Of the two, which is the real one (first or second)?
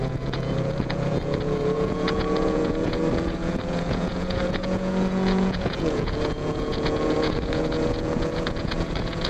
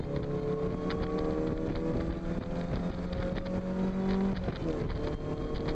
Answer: second